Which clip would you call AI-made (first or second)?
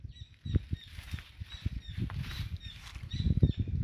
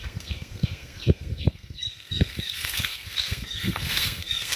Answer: second